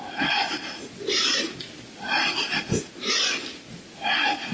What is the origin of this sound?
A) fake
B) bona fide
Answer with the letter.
B